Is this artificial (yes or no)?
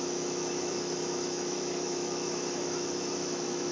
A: yes